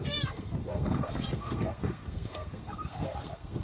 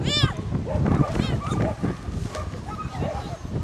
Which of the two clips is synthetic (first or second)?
first